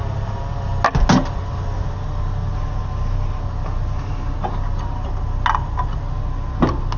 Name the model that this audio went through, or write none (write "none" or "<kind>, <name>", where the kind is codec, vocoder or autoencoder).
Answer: none